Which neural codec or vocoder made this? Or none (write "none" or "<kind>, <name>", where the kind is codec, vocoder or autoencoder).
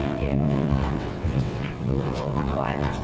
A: vocoder, WaveNeXt